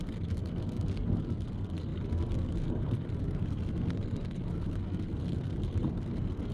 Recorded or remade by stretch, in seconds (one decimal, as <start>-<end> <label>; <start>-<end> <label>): 0.0-6.5 remade

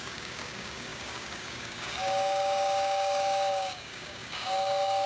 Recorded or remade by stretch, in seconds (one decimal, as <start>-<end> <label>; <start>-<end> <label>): 0.0-5.1 remade

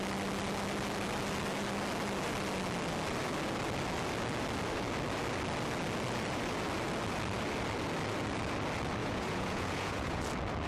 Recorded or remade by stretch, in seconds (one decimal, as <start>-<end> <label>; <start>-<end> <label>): 0.0-9.0 recorded; 9.0-10.2 remade; 10.2-10.7 recorded

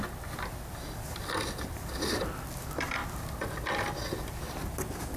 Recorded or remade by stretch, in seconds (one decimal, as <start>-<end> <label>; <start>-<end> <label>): 0.0-5.2 recorded

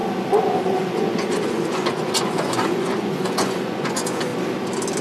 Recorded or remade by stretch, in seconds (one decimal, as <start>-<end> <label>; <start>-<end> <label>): 0.0-0.6 recorded; 0.6-4.3 remade; 4.3-5.0 recorded

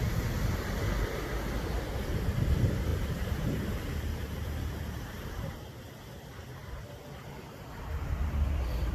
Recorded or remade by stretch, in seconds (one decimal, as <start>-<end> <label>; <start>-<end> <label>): 0.0-2.9 recorded; 2.9-5.8 remade; 5.8-8.9 recorded

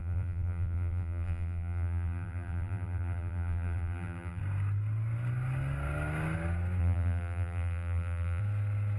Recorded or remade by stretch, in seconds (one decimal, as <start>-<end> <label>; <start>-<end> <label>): 0.0-4.4 remade; 4.4-6.8 recorded; 6.8-8.4 remade; 8.4-9.0 recorded

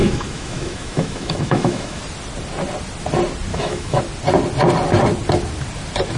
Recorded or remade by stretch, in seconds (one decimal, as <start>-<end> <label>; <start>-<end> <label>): 0.0-2.0 remade; 2.0-3.5 recorded; 3.5-4.0 remade; 4.0-6.2 recorded